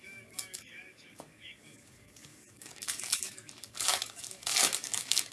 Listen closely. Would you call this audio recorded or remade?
remade